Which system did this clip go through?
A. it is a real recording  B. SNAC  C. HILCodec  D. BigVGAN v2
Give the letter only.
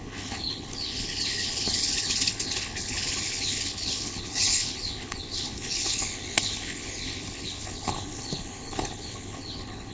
C